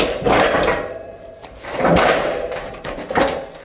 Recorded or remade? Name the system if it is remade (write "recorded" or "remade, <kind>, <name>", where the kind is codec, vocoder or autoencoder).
remade, vocoder, BigVGAN v2